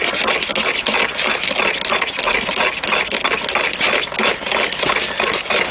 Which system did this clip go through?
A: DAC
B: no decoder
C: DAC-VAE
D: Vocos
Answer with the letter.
B